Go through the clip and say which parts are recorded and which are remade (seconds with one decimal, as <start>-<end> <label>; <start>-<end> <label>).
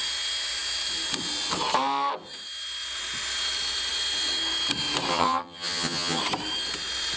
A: 0.0-5.1 recorded; 5.1-6.2 remade; 6.2-7.2 recorded